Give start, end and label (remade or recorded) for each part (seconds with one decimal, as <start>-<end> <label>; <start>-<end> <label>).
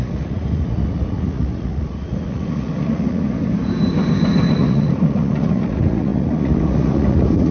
0.0-3.5 remade; 3.5-4.5 recorded; 4.5-7.5 remade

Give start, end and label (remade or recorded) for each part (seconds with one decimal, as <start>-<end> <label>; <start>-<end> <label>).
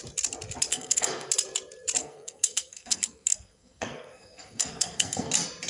0.0-0.7 recorded; 0.7-1.3 remade; 1.3-2.0 recorded; 2.0-5.3 remade; 5.3-5.7 recorded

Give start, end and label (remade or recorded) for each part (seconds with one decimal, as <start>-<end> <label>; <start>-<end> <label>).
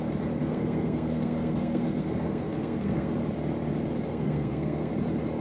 0.0-0.4 recorded; 0.4-3.1 remade; 3.1-4.1 recorded; 4.1-4.9 remade; 4.9-5.4 recorded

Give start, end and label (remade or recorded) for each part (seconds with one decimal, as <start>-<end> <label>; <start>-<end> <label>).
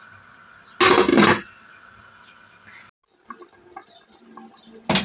0.0-1.1 recorded; 1.1-2.0 remade; 2.0-5.0 recorded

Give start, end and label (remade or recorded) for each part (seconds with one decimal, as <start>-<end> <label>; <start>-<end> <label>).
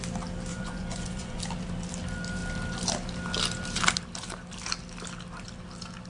0.0-0.5 recorded; 0.5-1.4 remade; 1.4-6.1 recorded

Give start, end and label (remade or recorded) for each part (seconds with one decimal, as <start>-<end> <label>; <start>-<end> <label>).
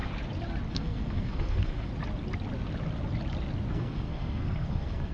0.0-0.7 recorded; 0.7-1.9 remade; 1.9-3.7 recorded; 3.7-5.1 remade